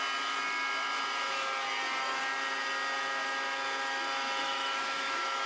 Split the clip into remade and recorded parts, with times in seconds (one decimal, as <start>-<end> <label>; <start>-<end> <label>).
0.0-4.4 recorded; 4.4-5.5 remade